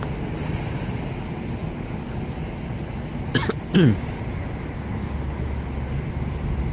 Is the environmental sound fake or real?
real